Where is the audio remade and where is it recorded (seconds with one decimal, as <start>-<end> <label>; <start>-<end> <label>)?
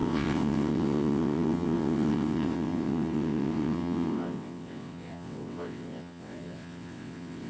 0.0-7.5 remade